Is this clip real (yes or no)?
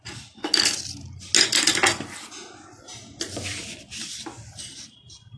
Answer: yes